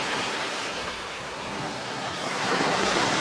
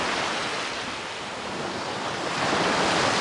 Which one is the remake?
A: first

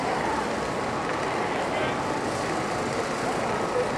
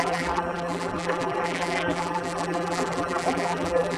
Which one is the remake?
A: second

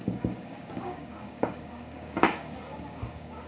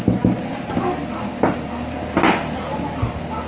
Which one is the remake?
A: first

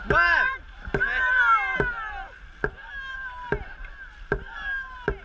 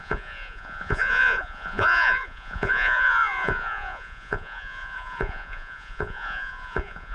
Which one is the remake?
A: second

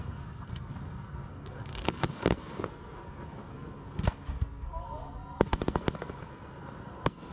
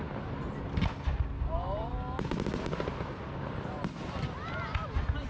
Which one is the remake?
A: first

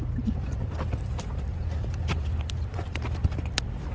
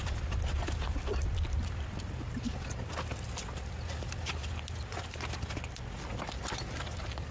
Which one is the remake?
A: first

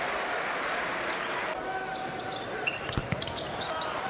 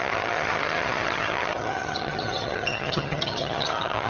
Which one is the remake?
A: second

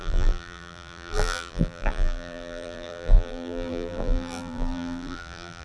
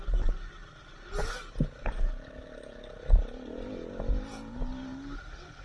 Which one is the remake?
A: first